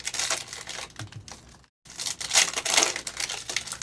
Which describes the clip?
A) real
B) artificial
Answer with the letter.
A